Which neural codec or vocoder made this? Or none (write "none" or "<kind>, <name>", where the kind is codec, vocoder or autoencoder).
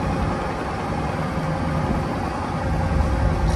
none